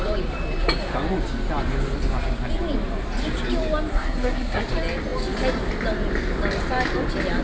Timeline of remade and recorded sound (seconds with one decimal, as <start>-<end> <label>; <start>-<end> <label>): 0.0-3.9 recorded; 3.9-4.6 remade; 4.6-7.4 recorded